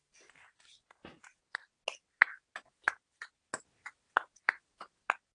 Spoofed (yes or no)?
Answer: no